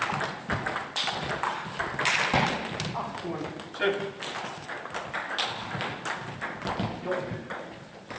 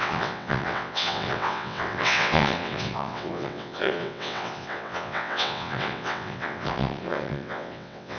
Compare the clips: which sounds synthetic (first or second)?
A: second